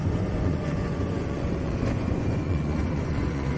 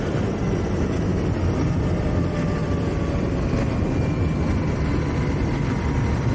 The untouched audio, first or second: second